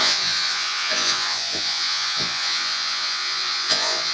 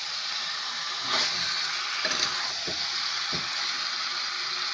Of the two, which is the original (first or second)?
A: second